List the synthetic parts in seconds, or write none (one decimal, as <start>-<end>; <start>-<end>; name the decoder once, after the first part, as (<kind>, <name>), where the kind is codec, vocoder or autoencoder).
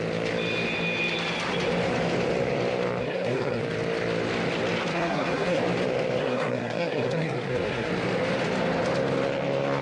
3.0-3.6 (codec, SNAC); 4.9-5.6; 6.2-7.9